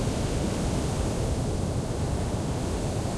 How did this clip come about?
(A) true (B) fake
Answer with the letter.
A